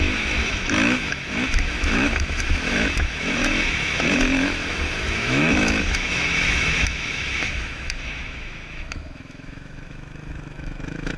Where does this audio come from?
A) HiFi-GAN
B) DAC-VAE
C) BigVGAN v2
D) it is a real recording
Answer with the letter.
B